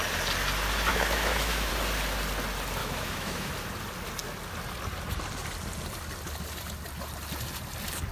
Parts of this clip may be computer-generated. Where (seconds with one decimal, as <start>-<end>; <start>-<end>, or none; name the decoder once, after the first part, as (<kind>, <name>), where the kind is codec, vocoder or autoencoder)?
0.9-1.7 (autoencoder, DAC-VAE); 2.8-3.5